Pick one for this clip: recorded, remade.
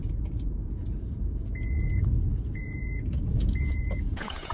remade